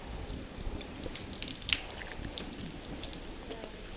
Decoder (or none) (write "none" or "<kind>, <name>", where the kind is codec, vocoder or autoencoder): none